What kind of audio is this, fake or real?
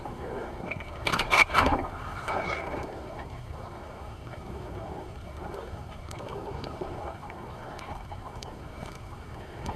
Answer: fake